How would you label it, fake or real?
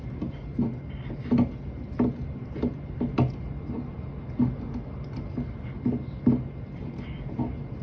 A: real